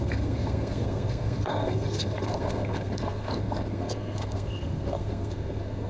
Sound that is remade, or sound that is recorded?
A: remade